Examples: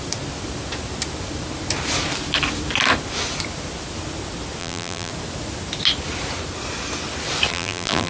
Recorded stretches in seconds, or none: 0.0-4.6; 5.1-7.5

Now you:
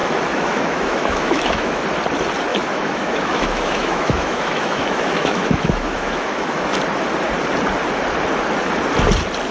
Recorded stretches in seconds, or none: 1.8-2.5; 6.7-9.5

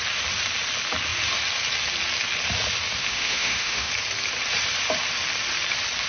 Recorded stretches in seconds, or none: 0.0-3.0; 3.9-6.1

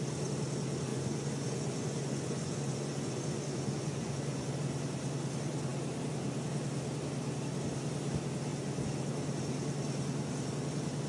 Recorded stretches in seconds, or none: 0.0-0.9; 4.5-11.1

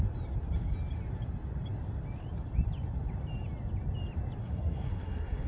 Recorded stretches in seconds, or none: 0.0-4.4

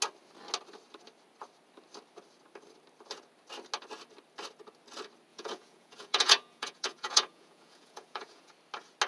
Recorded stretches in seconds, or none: 0.0-5.3; 8.5-9.1